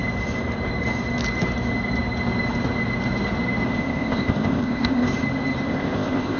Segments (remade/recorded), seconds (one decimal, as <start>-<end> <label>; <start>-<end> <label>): 0.0-3.8 recorded; 3.8-5.1 remade; 5.1-5.7 recorded; 5.7-6.4 remade